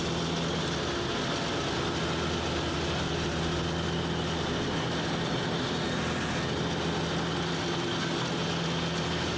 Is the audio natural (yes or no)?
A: yes